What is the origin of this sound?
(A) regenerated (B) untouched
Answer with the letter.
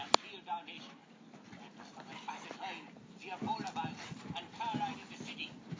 B